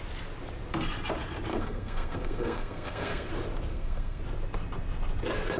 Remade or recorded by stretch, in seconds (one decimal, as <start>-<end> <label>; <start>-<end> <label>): 0.0-1.5 recorded; 1.5-3.3 remade; 3.3-3.7 recorded; 3.7-4.2 remade; 4.2-5.6 recorded